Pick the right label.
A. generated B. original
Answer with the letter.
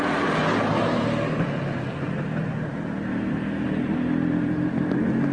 B